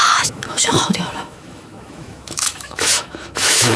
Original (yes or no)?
no